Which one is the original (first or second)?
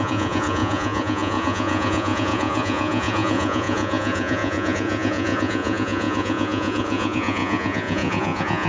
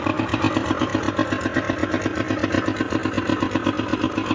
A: second